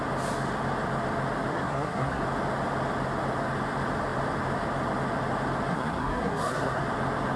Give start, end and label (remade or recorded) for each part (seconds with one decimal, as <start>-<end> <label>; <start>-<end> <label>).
0.0-1.5 recorded; 1.5-2.2 remade; 2.2-5.7 recorded; 5.7-6.8 remade; 6.8-7.4 recorded